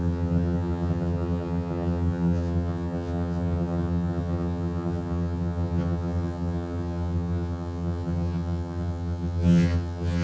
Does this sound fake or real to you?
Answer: fake